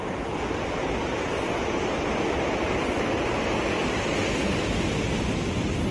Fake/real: real